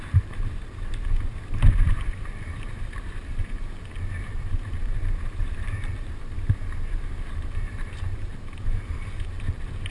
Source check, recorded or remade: remade